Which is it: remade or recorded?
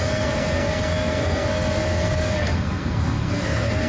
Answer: remade